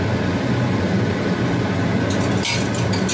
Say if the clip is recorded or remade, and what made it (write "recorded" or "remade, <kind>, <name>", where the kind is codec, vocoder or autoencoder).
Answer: recorded